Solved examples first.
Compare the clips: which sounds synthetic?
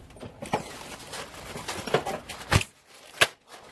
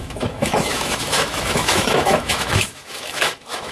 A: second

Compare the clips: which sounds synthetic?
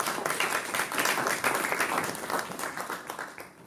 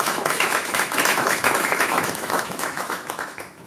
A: second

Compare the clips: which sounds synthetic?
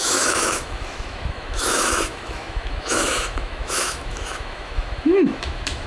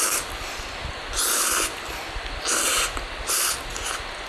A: first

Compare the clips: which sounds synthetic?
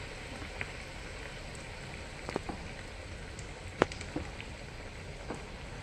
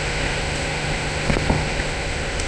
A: second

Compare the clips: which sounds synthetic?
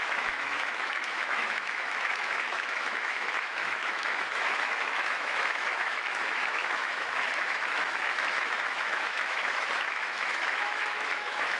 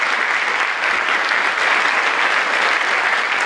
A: first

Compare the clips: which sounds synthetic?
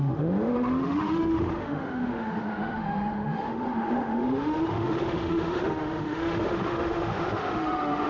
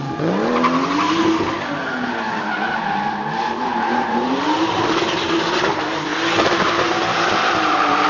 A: first